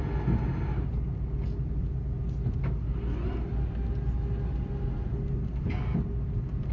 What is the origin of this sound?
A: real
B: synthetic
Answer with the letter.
A